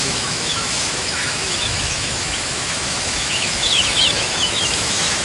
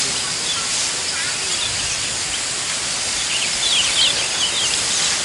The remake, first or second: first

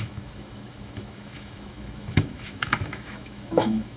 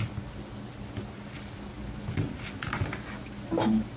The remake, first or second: first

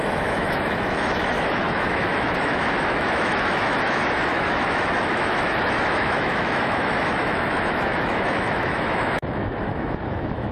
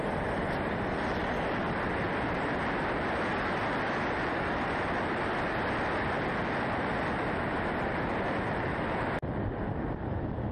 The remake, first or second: first